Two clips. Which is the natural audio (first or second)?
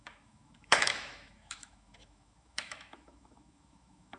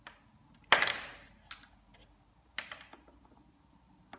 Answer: second